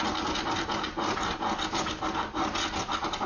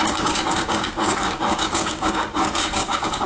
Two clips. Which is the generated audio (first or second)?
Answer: second